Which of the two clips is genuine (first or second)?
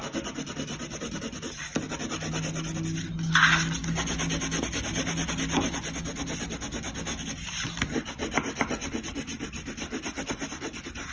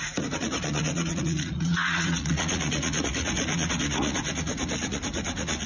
first